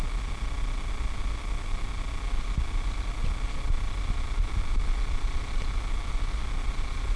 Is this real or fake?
real